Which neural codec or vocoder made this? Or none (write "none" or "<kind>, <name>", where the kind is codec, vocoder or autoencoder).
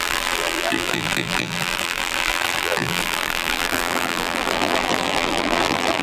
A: vocoder, BigVGAN v2